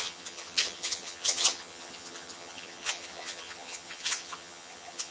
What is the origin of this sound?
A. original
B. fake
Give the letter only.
B